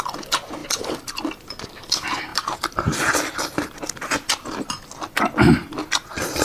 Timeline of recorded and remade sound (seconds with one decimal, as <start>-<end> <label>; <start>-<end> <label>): 0.0-2.3 recorded; 2.3-4.0 remade; 4.0-6.4 recorded